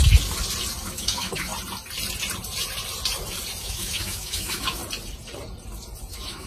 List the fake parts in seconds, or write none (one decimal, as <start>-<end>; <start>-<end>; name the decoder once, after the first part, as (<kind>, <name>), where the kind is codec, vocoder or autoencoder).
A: 0.8-1.5 (autoencoder, DAC-VAE); 3.6-4.8; 6.1-6.5